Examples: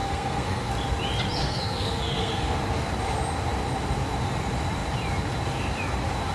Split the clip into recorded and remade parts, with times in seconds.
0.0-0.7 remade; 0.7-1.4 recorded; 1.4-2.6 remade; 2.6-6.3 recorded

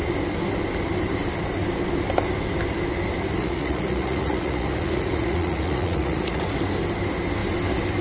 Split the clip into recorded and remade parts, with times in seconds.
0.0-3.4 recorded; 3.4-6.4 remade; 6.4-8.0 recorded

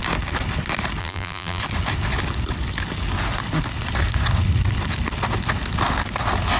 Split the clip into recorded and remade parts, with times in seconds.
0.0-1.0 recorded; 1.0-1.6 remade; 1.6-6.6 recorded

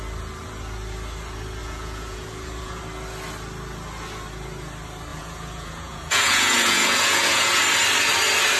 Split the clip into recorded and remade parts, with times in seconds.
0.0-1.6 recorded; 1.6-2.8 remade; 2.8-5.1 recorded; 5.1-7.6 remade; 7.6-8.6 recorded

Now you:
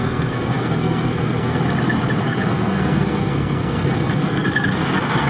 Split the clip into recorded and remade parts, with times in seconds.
0.0-1.6 remade; 1.6-2.2 recorded; 2.2-5.3 remade

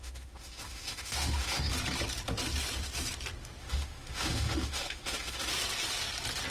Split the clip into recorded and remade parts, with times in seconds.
0.0-1.7 remade; 1.7-3.6 recorded; 3.6-5.5 remade; 5.5-6.5 recorded